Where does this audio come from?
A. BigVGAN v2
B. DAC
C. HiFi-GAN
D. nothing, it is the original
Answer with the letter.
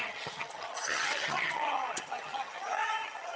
C